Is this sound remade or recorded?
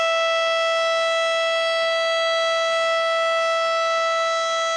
recorded